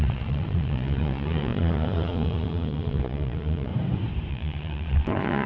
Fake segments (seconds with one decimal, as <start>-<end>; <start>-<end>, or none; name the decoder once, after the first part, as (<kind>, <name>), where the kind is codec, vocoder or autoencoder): 0.0-3.7 (vocoder, Vocos); 4.3-5.5